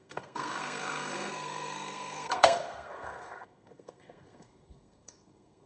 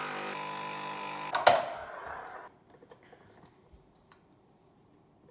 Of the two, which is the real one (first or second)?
second